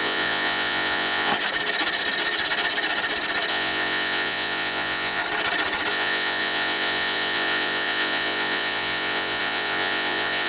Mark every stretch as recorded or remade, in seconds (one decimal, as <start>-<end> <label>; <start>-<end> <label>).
0.0-1.3 remade; 1.3-3.5 recorded; 3.5-5.2 remade; 5.2-5.9 recorded; 5.9-10.5 remade